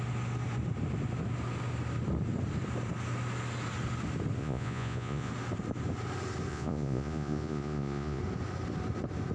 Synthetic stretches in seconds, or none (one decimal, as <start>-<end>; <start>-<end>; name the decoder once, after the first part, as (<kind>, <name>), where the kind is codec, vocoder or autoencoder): 4.4-5.3 (vocoder, Vocos); 6.5-8.2